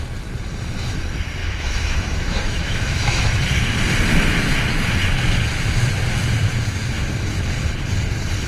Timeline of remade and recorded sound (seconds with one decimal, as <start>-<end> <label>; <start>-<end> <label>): 0.0-1.4 recorded; 1.4-3.4 remade; 3.4-8.5 recorded